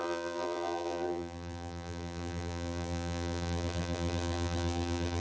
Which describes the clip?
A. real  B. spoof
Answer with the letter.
B